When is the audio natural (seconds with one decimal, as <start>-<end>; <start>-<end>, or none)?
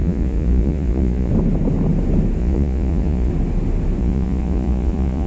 1.3-2.4; 3.3-4.0